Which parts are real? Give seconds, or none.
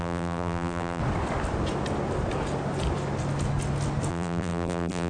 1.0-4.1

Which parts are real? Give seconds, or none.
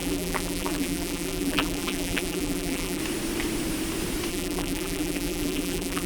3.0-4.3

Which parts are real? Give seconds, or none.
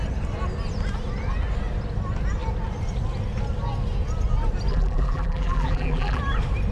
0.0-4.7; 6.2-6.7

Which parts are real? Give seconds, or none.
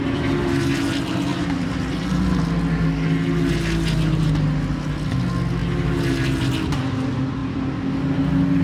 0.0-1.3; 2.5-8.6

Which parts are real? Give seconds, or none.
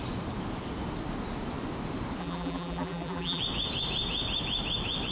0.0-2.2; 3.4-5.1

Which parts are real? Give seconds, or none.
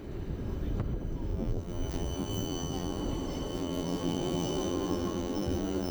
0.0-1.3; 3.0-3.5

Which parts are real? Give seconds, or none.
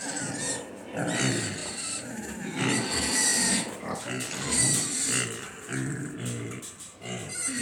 0.0-1.6; 2.5-3.3; 4.0-7.6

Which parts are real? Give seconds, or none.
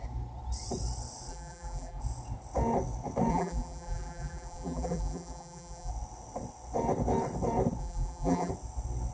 0.0-1.3; 2.0-3.3; 5.9-7.8; 8.5-9.1